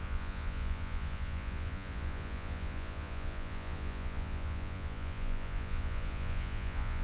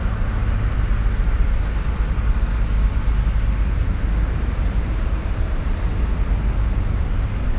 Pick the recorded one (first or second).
second